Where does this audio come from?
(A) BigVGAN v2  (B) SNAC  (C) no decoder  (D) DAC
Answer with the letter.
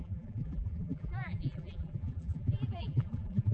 A